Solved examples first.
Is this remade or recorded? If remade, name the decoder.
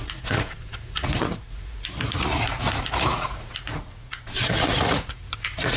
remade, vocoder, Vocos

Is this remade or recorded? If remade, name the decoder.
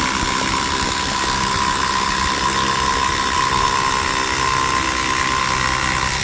recorded